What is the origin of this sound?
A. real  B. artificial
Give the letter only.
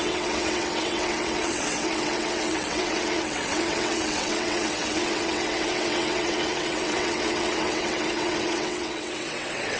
B